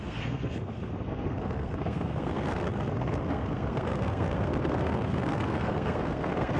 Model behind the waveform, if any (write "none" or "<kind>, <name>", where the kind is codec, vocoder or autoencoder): codec, SNAC